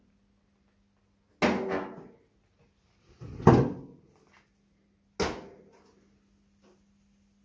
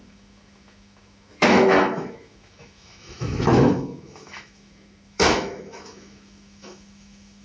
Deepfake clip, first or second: second